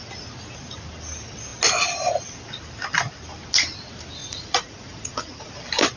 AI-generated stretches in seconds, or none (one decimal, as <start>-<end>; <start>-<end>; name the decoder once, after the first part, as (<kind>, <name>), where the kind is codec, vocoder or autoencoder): 4.2-5.5 (vocoder, Vocos)